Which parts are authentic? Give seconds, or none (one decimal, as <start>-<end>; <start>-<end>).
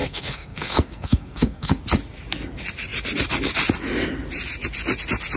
1.8-5.4